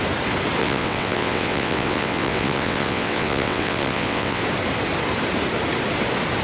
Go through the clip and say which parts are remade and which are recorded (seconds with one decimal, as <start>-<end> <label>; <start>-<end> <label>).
0.0-0.6 recorded; 0.6-4.4 remade; 4.4-6.4 recorded